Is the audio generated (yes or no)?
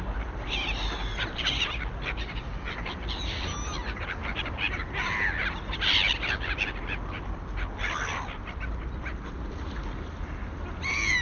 no